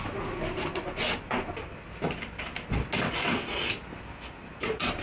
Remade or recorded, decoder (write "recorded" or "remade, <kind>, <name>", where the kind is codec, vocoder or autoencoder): recorded